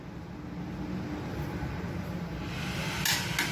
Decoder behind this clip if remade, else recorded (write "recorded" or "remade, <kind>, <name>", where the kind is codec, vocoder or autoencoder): recorded